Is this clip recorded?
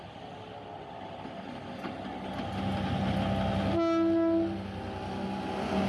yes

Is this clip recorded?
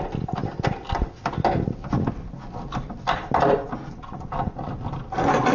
yes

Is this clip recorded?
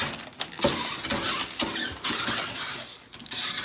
yes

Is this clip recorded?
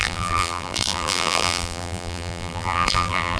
no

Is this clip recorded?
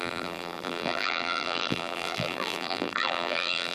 no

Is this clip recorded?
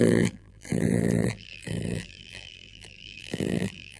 no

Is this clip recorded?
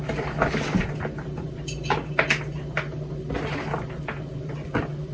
yes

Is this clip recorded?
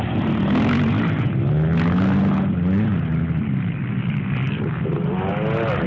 yes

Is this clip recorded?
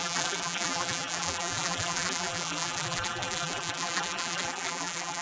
no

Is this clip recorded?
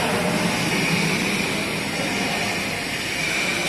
yes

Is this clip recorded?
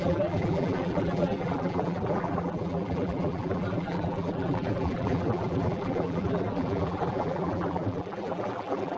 no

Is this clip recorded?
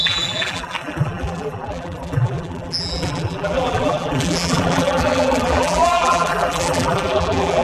no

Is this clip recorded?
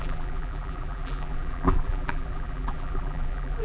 no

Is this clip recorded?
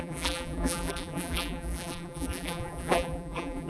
no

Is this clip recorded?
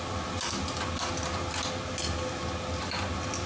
yes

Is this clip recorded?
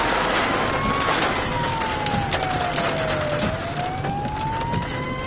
yes